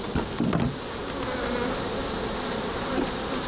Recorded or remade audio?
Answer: recorded